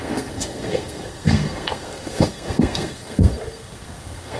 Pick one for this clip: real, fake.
fake